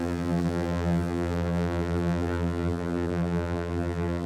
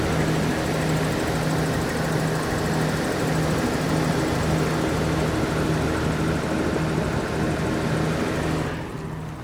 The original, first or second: second